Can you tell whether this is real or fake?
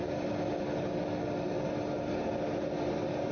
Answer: real